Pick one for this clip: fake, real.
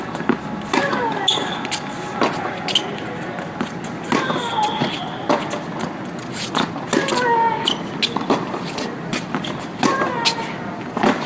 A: real